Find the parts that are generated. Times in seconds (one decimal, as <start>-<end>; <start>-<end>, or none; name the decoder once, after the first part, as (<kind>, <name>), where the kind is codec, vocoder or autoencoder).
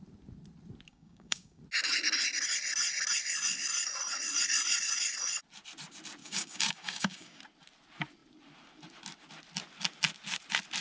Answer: 0.9-1.6 (codec, DAC); 6.2-7.4